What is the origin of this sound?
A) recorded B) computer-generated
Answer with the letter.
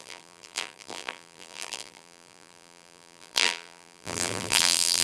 B